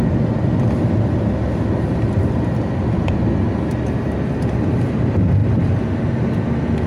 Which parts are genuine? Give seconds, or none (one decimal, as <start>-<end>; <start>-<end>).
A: 0.0-6.9